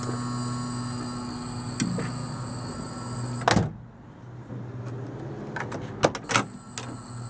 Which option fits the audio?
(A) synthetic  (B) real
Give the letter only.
B